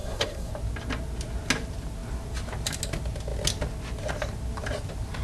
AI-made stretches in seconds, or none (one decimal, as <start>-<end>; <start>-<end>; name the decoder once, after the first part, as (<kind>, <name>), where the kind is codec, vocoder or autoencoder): 0.0-0.5 (codec, SNAC)